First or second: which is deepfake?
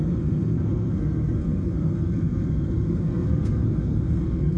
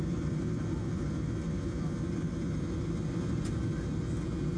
first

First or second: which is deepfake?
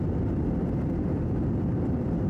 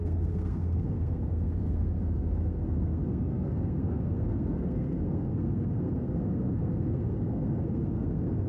second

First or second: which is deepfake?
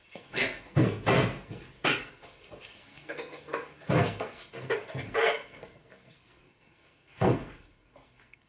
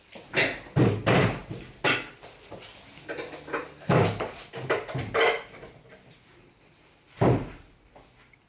first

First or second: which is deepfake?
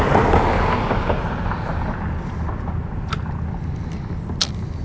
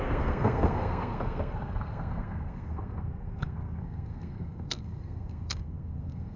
second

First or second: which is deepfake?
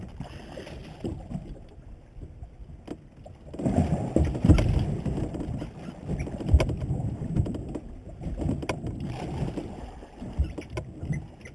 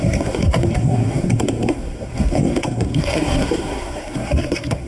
second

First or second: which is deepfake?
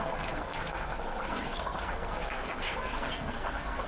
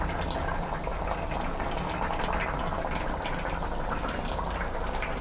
first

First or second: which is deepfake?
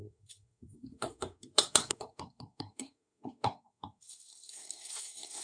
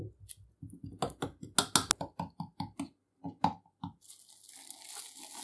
first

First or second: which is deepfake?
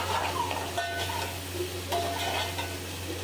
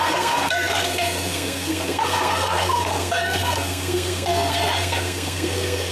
second